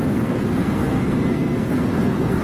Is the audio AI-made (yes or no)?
yes